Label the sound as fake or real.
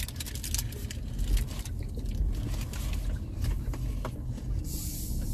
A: real